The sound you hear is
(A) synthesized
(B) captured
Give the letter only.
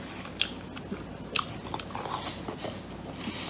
B